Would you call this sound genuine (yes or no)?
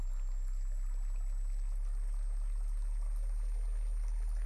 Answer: yes